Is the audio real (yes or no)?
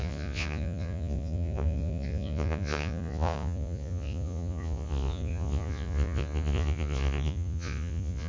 no